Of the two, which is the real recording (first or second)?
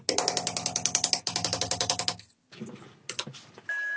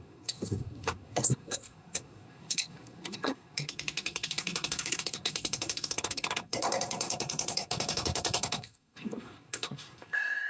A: first